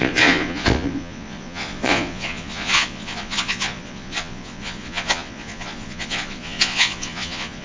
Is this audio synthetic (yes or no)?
yes